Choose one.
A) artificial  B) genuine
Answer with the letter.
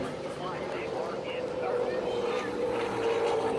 B